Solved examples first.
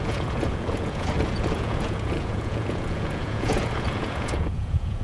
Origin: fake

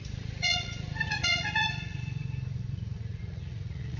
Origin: fake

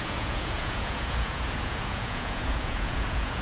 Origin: fake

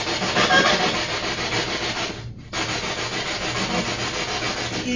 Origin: real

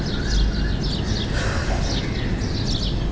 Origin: real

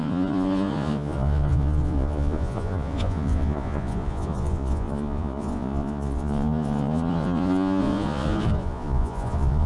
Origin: fake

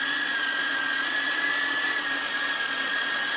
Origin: fake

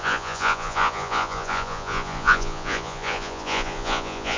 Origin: fake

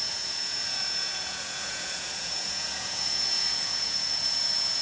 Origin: fake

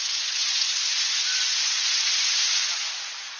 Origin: fake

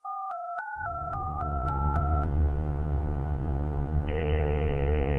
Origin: fake